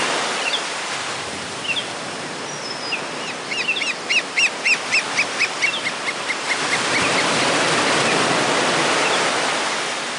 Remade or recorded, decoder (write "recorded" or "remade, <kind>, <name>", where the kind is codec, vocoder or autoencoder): recorded